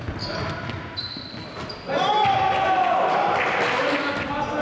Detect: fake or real real